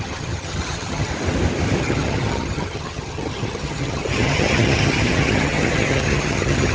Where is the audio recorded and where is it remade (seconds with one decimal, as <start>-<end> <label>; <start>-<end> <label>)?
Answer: 0.0-1.1 remade; 1.1-1.8 recorded; 1.8-6.7 remade